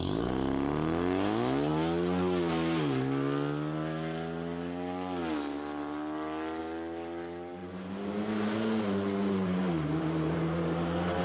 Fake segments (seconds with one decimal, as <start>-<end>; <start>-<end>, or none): 7.6-11.2